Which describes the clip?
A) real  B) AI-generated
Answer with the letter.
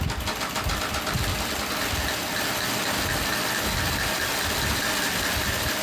A